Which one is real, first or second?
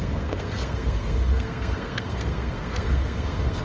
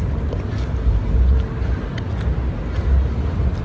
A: second